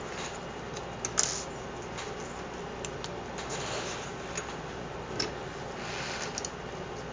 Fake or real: real